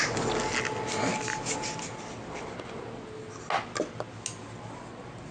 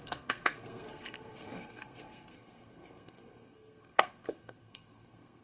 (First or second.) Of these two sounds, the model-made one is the second